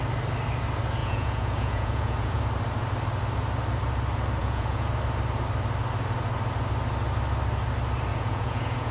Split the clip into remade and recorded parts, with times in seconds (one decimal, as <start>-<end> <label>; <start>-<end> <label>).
0.0-1.0 recorded; 1.0-2.4 remade; 2.4-4.4 recorded; 4.4-4.9 remade; 4.9-8.1 recorded; 8.1-8.9 remade